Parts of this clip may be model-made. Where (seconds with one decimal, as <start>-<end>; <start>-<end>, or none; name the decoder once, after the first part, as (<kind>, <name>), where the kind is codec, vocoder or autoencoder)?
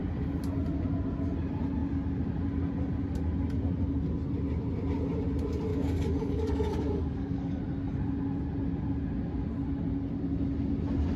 5.7-7.6 (codec, DAC)